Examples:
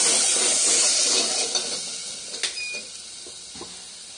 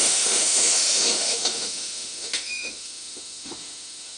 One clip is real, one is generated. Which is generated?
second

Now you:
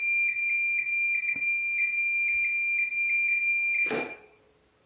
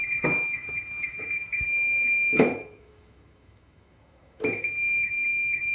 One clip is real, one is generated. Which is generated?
second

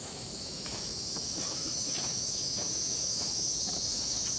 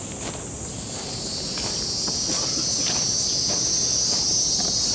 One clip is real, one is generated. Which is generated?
first